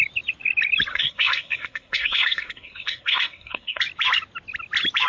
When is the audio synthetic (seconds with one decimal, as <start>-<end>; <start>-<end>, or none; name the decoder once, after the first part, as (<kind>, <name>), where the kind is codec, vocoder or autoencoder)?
0.9-3.8 (codec, SNAC)